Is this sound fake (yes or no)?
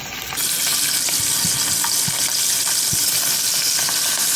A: no